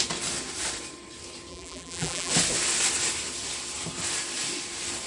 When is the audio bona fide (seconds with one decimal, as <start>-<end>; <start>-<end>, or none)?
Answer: 0.0-1.5; 2.3-5.1